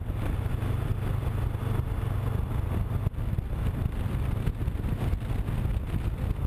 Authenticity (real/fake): real